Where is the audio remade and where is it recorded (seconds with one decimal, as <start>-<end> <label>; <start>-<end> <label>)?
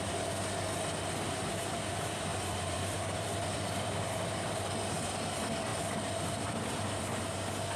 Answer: 0.0-2.3 recorded; 2.3-4.7 remade; 4.7-5.7 recorded; 5.7-7.0 remade; 7.0-7.8 recorded